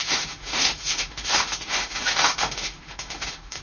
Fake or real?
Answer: fake